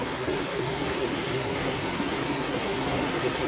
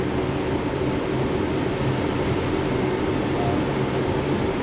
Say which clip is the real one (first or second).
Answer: second